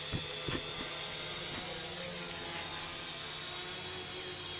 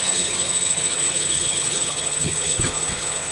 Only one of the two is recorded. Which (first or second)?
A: first